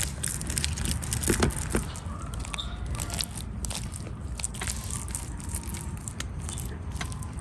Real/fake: real